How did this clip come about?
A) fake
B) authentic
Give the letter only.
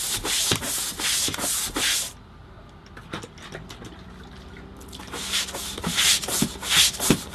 B